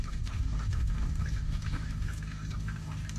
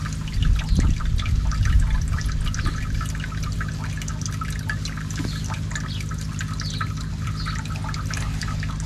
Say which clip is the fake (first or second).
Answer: first